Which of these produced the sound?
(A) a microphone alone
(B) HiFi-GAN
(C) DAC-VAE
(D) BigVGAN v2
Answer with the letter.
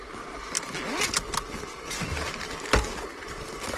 A